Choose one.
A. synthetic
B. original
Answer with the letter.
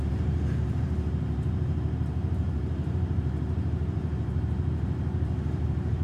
A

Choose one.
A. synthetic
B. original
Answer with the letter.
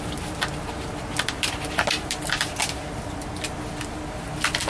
B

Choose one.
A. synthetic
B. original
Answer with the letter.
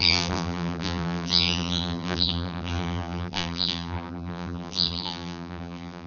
A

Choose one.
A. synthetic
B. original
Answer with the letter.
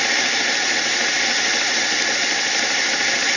B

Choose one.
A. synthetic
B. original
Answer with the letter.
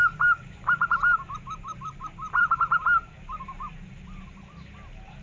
A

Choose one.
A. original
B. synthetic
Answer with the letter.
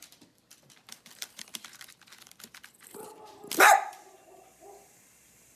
B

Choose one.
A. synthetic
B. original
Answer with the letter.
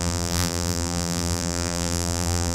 A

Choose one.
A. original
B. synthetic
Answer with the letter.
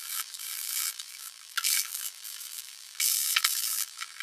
B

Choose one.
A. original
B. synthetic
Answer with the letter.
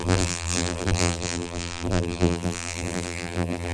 B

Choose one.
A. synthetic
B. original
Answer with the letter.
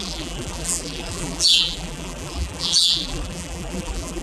A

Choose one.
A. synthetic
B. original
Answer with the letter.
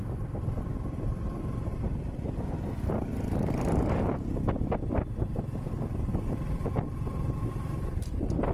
B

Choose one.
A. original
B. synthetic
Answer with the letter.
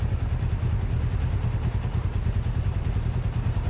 A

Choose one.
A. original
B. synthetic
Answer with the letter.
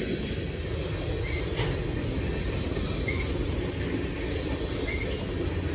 A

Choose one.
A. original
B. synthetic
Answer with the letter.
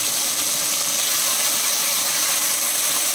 A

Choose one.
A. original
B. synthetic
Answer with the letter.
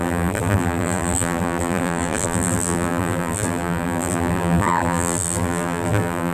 B